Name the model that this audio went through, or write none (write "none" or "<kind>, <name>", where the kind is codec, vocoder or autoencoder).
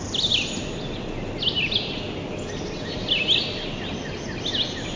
none